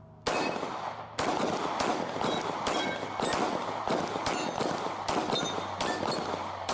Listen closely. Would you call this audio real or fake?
real